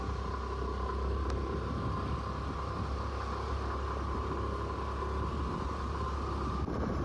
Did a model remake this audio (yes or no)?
no